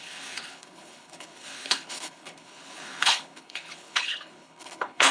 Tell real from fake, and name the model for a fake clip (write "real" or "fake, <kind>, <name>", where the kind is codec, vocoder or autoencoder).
fake, codec, HILCodec